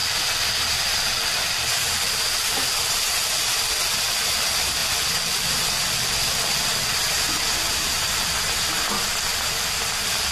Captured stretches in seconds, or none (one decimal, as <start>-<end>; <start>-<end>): 3.6-4.8; 8.4-9.3